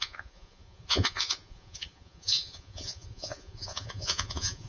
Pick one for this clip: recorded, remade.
remade